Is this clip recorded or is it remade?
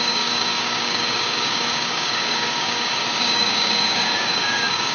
remade